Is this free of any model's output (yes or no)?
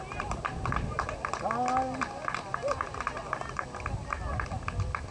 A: yes